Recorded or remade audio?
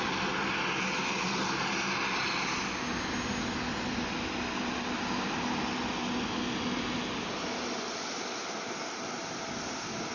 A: recorded